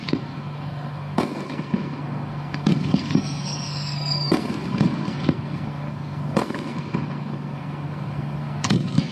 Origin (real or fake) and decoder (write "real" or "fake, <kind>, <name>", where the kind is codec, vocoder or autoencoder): fake, codec, SNAC